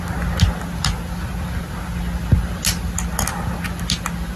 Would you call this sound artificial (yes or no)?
no